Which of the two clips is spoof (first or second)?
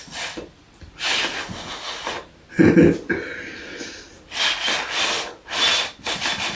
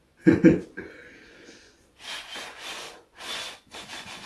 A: second